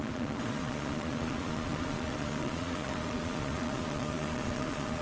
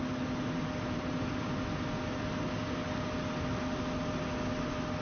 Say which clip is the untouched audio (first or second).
second